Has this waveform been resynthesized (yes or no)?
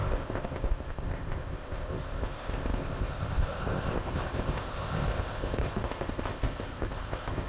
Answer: yes